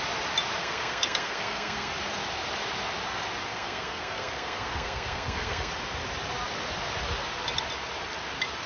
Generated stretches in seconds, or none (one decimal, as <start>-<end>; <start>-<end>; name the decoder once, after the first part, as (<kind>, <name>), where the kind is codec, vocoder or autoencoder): 0.6-1.9 (codec, SNAC); 3.5-5.7